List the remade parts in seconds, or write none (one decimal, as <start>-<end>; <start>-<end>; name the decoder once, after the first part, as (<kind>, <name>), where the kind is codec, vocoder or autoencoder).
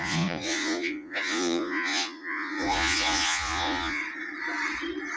0.0-4.0 (vocoder, Vocos)